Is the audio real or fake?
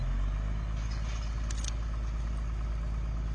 real